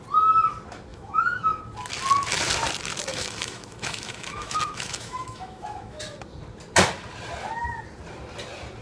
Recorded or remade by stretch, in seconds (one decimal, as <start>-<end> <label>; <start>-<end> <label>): 0.0-0.9 recorded; 0.9-1.6 remade; 1.6-3.1 recorded; 3.1-6.0 remade; 6.0-8.8 recorded